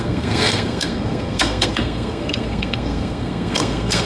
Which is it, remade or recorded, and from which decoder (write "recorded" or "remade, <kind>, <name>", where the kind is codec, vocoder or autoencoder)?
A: remade, codec, SNAC